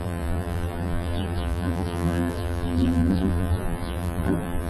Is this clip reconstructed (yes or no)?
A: yes